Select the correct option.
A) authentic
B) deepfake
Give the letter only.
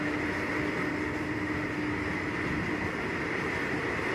A